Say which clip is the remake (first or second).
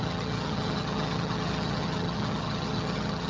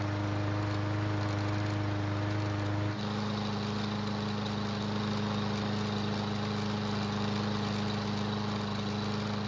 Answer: first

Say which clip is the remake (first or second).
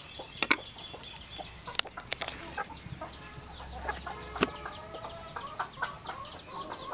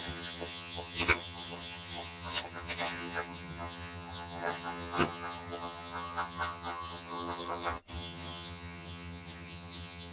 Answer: second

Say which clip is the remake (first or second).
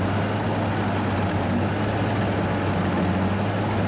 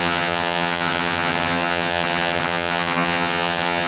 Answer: second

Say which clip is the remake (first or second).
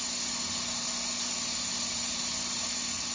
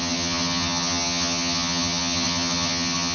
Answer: second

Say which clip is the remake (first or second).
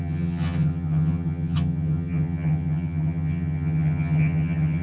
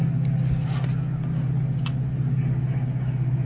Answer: first